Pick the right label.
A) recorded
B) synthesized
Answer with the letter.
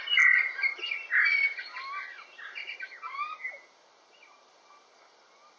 A